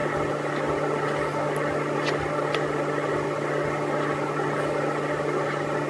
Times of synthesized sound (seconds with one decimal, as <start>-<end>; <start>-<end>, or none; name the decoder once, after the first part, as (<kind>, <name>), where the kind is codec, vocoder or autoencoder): none